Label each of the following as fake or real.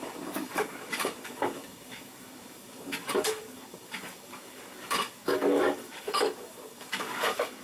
fake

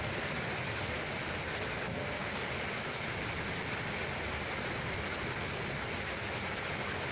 real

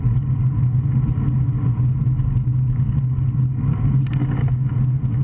real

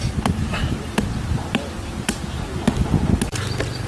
real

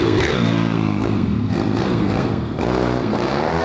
fake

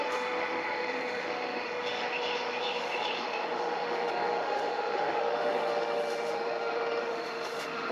fake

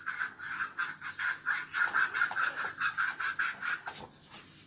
real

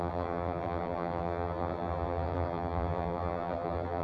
fake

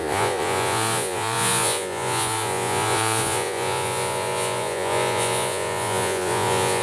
fake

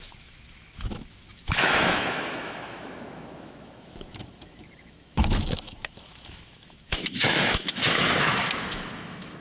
fake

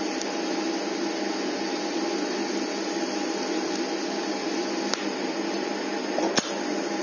real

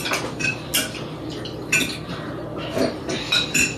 real